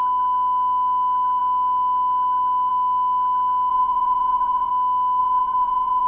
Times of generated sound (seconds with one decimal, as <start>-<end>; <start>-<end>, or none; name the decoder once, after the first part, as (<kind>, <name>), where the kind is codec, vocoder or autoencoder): 3.7-4.7 (vocoder, Vocos); 5.2-6.1